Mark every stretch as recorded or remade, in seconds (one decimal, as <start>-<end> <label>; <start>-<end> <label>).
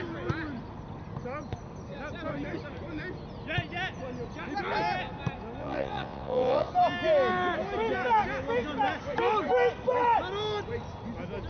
0.0-5.6 recorded; 5.6-6.7 remade; 6.7-11.5 recorded